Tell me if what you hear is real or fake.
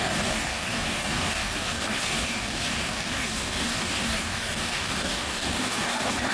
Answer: fake